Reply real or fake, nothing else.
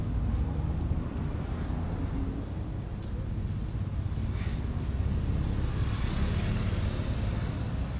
real